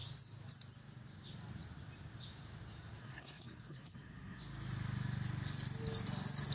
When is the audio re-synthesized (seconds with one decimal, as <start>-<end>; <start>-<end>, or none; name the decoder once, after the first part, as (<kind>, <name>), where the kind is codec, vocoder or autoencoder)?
3.0-4.4 (codec, SNAC)

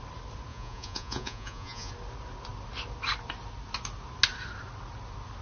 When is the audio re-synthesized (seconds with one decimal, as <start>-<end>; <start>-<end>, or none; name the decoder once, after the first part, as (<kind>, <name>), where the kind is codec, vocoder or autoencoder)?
0.5-1.9 (vocoder, Vocos)

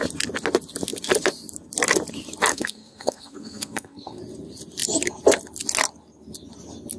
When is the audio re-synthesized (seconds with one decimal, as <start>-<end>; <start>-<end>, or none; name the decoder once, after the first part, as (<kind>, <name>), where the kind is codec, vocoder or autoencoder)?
2.5-4.2 (codec, SNAC)

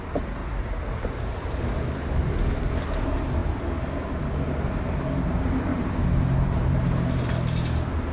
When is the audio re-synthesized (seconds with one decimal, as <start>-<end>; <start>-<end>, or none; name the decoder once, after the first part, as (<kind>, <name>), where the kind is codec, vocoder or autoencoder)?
0.4-1.6 (vocoder, BigVGAN v2); 5.7-7.3

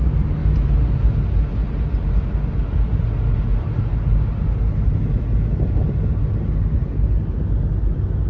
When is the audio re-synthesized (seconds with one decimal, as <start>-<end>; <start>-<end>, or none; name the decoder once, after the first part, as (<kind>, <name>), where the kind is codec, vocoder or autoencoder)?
none

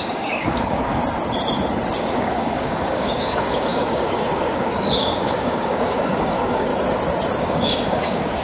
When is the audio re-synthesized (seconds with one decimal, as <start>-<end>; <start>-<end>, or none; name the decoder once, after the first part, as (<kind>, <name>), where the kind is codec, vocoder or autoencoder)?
0.0-1.0 (codec, DAC); 2.0-6.7; 7.4-8.4